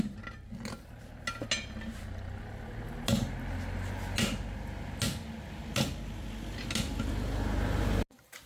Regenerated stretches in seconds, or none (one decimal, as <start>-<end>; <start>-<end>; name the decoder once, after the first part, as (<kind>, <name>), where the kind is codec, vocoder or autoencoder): 1.9-2.5 (vocoder, BigVGAN v2)